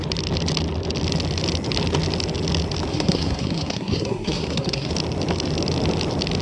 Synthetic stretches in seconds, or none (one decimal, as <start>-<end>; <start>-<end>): 2.9-4.9